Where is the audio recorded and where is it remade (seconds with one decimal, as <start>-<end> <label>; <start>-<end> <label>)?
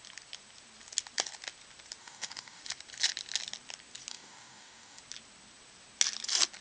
0.0-2.0 recorded; 2.0-2.6 remade; 2.6-4.1 recorded; 4.1-5.0 remade; 5.0-6.6 recorded